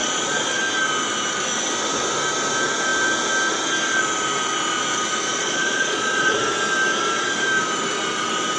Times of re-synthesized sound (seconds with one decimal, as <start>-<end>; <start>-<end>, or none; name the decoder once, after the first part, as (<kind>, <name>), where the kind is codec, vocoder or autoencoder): 0.0-0.6 (vocoder, Vocos); 5.3-6.4

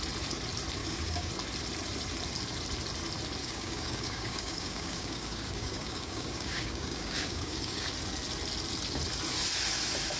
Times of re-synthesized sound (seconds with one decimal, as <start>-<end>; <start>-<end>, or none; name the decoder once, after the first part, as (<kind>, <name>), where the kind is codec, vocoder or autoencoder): 0.8-1.3 (codec, DAC); 3.4-7.9

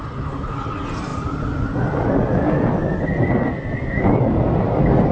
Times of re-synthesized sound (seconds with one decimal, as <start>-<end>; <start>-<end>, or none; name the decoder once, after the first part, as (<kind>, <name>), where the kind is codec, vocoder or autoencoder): none

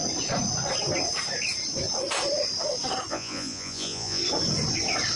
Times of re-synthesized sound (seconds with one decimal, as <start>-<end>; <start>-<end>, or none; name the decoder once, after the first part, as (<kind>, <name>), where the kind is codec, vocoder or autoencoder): 3.1-4.2 (vocoder, Vocos)

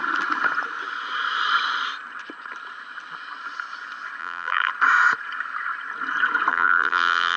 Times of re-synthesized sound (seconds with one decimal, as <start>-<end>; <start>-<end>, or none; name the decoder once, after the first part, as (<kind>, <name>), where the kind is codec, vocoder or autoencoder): 4.2-4.7 (vocoder, BigVGAN v2); 6.5-7.4